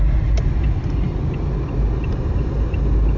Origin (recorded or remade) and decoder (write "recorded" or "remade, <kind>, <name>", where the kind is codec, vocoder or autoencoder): recorded